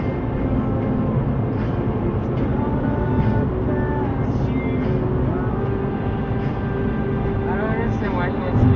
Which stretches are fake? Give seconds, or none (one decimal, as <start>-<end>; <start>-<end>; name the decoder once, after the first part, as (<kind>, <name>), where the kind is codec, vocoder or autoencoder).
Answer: none